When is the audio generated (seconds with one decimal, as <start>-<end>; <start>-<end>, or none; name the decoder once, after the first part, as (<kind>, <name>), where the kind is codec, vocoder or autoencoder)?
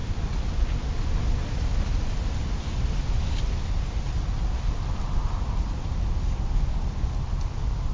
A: none